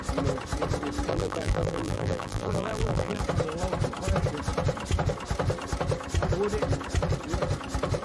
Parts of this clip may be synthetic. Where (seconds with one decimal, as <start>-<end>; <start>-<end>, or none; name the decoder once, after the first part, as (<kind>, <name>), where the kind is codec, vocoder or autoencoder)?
1.1-3.2 (vocoder, BigVGAN v2)